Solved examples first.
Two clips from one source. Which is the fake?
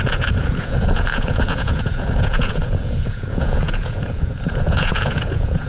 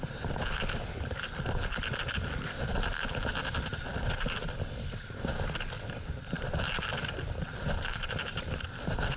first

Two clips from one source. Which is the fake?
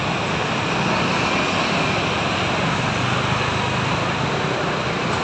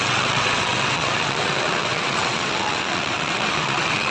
second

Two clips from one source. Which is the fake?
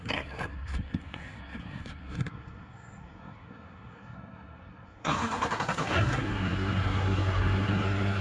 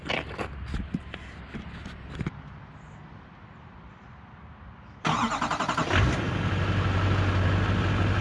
first